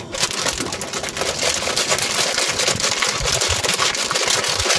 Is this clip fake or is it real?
real